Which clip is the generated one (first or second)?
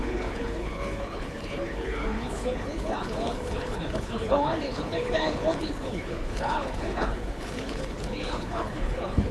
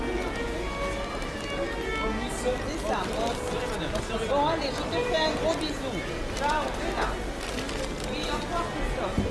first